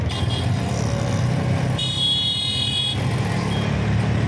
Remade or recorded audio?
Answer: recorded